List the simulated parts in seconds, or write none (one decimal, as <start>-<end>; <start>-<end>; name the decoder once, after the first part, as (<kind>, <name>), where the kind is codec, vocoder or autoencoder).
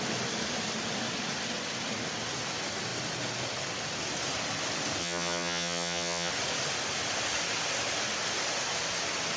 5.0-6.3 (vocoder, HiFi-GAN)